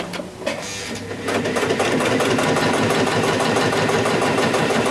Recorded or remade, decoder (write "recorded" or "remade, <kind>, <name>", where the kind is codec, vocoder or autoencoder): recorded